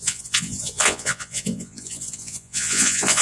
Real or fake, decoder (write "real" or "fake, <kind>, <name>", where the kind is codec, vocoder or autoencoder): fake, vocoder, Vocos